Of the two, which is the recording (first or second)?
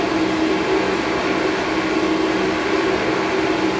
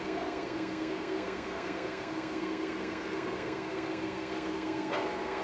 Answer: first